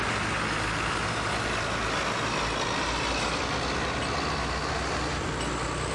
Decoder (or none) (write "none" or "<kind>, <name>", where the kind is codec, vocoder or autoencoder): none